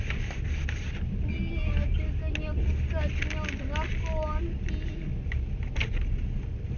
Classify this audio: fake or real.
real